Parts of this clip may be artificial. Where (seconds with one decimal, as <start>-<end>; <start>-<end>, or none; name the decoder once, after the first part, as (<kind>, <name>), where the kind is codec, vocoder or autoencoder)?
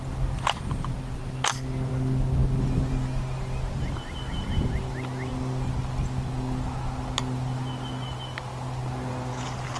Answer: none